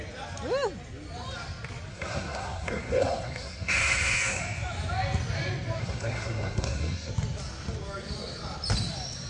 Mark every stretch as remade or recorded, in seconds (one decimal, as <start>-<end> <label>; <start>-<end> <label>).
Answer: 0.0-1.9 recorded; 1.9-4.4 remade; 4.4-5.8 recorded; 5.8-7.1 remade; 7.1-9.3 recorded